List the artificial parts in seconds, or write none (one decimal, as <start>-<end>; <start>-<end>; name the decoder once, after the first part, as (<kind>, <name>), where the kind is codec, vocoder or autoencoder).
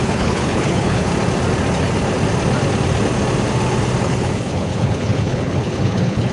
0.0-1.1 (codec, HILCodec); 4.0-6.3